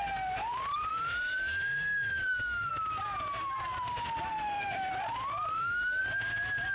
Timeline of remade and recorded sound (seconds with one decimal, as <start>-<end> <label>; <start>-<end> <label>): 0.0-0.9 recorded; 0.9-2.7 remade; 2.7-4.3 recorded; 4.3-4.9 remade; 4.9-5.5 recorded; 5.5-6.0 remade; 6.0-6.7 recorded